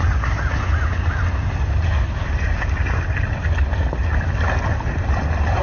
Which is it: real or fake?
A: real